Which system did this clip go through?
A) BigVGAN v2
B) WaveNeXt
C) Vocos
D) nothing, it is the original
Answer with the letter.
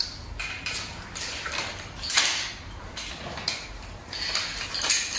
D